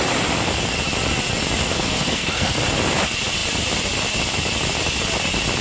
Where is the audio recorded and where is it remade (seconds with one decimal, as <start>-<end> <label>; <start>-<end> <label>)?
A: 0.0-1.6 recorded; 1.6-2.6 remade; 2.6-5.6 recorded